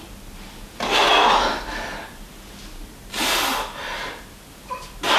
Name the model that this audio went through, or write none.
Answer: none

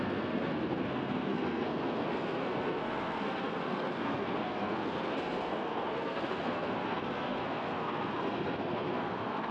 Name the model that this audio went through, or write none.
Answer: codec, SNAC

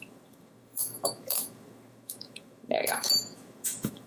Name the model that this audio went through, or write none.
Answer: autoencoder, DAC-VAE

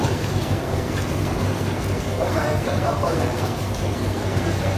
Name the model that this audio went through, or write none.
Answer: codec, SNAC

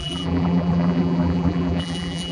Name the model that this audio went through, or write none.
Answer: vocoder, BigVGAN v2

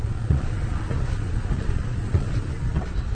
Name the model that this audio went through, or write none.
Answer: vocoder, Vocos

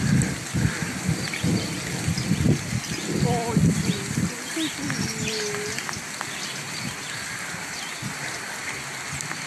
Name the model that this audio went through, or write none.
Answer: none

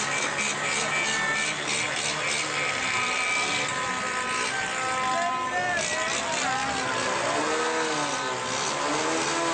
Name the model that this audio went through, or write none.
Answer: none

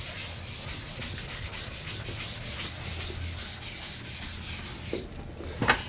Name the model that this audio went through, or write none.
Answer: none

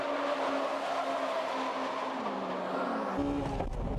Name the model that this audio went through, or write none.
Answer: none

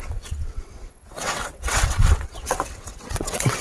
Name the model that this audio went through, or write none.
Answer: vocoder, WaveNeXt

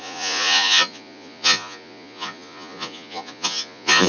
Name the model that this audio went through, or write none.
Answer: vocoder, Vocos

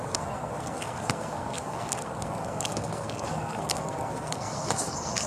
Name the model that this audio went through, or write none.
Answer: codec, SNAC